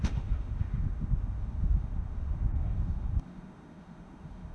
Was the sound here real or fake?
fake